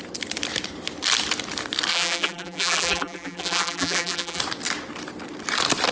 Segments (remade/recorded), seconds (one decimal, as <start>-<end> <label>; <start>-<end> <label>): 0.0-1.9 recorded; 1.9-4.4 remade; 4.4-5.9 recorded

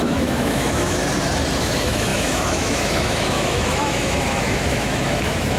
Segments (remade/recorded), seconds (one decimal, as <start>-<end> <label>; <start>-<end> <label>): 0.0-1.0 remade; 1.0-1.6 recorded; 1.6-5.6 remade

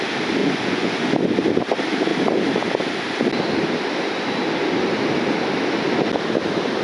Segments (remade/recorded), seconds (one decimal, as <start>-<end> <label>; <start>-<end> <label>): 0.0-0.4 recorded; 0.4-1.1 remade; 1.1-6.8 recorded

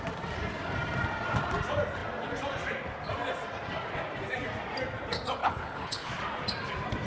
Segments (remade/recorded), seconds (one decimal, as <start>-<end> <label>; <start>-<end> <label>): 0.0-5.4 recorded; 5.4-6.1 remade; 6.1-7.1 recorded

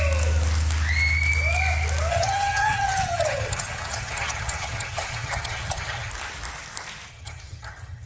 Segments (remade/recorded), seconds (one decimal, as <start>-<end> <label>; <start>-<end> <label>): 0.0-2.1 recorded; 2.1-6.1 remade; 6.1-7.1 recorded; 7.1-8.1 remade

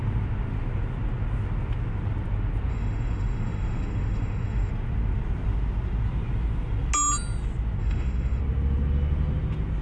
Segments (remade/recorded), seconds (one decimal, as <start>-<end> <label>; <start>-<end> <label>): 0.0-2.7 recorded; 2.7-4.7 remade; 4.7-7.8 recorded; 7.8-8.4 remade; 8.4-9.8 recorded

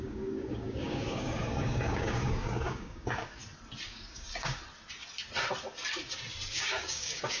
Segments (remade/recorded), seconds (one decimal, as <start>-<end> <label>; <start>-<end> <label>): 0.0-3.4 remade; 3.4-3.9 recorded; 3.9-4.6 remade; 4.6-6.5 recorded; 6.5-7.4 remade